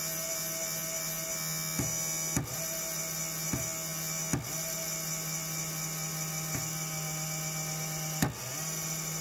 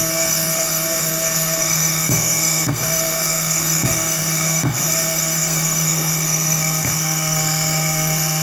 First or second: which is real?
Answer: first